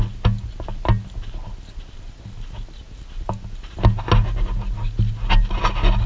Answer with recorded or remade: recorded